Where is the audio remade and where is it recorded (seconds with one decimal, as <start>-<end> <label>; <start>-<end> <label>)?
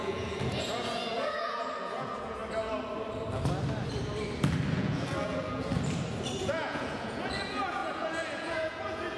0.0-2.4 remade; 2.4-4.7 recorded; 4.7-5.7 remade; 5.7-6.4 recorded; 6.4-9.2 remade